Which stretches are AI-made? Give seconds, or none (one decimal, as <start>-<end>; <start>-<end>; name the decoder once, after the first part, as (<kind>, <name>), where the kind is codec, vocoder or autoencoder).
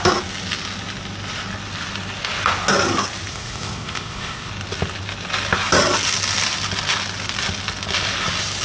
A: 3.3-4.5 (codec, ZipCodec)